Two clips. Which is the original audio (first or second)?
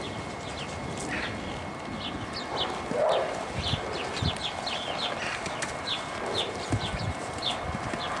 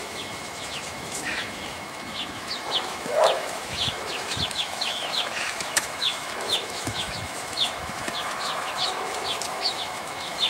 first